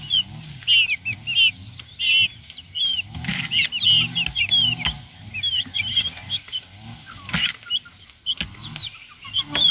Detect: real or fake real